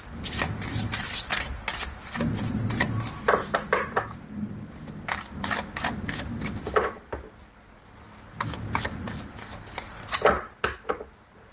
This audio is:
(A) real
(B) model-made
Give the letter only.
A